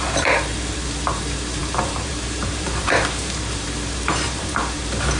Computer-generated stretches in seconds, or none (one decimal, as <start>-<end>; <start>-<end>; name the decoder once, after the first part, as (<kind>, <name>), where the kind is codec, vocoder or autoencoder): 0.0-0.5 (vocoder, BigVGAN v2); 1.1-5.2